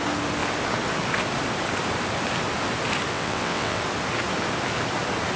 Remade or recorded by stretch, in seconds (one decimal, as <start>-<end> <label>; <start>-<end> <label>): 0.0-3.1 recorded; 3.1-3.8 remade; 3.8-5.4 recorded

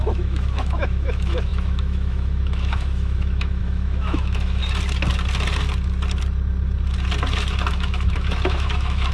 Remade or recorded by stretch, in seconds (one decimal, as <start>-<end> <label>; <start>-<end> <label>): 0.0-4.6 remade; 4.6-7.7 recorded; 7.7-9.1 remade

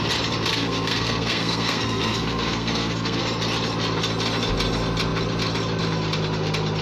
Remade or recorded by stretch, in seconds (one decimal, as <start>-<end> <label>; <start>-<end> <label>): 0.0-0.5 recorded; 0.5-3.2 remade; 3.2-6.8 recorded

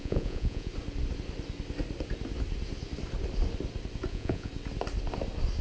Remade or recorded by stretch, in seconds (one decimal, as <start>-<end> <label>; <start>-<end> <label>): 0.0-0.7 remade; 0.7-4.1 recorded; 4.1-4.5 remade; 4.5-5.6 recorded

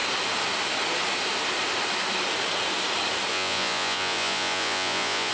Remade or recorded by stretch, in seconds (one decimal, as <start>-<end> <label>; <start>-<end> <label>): 0.0-3.3 recorded; 3.3-5.3 remade

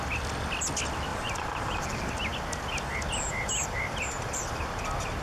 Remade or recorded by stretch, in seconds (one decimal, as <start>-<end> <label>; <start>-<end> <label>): 0.0-1.1 recorded; 1.1-1.8 remade; 1.8-5.2 recorded

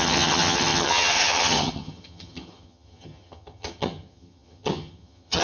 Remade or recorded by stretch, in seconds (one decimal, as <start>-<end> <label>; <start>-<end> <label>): 0.0-5.4 remade